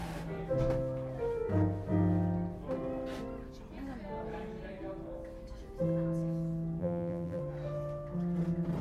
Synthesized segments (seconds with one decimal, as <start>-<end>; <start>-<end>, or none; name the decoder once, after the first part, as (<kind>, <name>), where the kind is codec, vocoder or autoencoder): 6.8-7.4 (vocoder, BigVGAN v2)